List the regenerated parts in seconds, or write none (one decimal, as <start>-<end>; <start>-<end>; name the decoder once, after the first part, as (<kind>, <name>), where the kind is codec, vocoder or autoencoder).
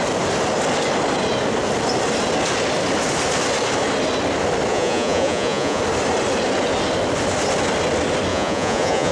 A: 4.7-5.8 (vocoder, Vocos); 8.3-9.1